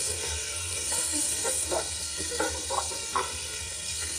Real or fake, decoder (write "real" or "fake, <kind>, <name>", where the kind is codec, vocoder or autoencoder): fake, codec, SNAC